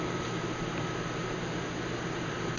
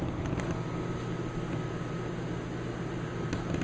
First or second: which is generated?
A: first